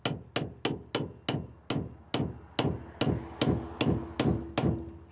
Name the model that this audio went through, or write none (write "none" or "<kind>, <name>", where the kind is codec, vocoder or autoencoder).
none